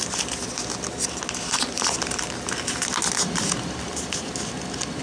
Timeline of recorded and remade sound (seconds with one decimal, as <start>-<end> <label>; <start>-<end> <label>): 0.0-5.0 recorded